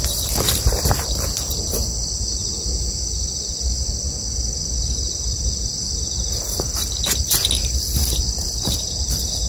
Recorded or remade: remade